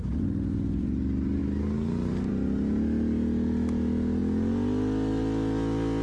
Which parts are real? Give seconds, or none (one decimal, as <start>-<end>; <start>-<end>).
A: 0.0-6.0